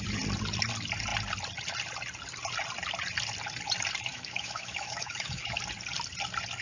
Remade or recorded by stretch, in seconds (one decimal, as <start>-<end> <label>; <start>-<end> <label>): 0.0-4.1 recorded; 4.1-5.5 remade; 5.5-6.6 recorded

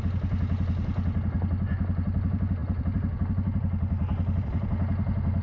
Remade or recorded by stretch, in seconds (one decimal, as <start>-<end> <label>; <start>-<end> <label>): 0.0-5.4 recorded

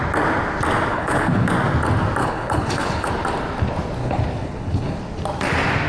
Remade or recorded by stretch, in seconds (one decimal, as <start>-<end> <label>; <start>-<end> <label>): 0.0-0.9 recorded; 0.9-1.5 remade; 1.5-2.2 recorded; 2.2-3.1 remade; 3.1-4.0 recorded; 4.0-5.0 remade; 5.0-5.9 recorded

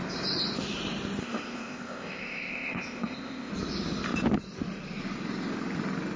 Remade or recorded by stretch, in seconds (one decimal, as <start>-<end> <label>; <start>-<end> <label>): 0.0-1.2 recorded; 1.2-3.5 remade; 3.5-6.2 recorded

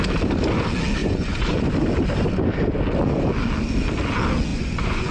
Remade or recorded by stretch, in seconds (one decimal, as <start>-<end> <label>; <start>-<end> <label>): 0.0-1.0 recorded; 1.0-1.6 remade; 1.6-4.5 recorded; 4.5-5.1 remade

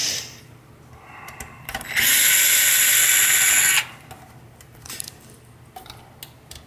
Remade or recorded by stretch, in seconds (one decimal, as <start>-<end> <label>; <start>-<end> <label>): 0.0-6.7 recorded

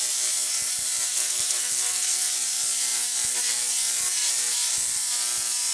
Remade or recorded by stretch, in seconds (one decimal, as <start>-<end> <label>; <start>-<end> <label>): 0.0-1.1 recorded; 1.1-2.3 remade; 2.3-5.7 recorded